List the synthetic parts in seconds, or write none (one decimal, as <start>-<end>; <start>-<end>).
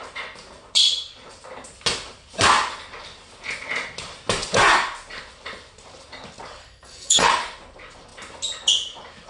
6.6-7.3